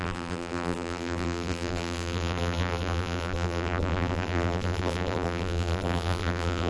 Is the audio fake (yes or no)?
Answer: yes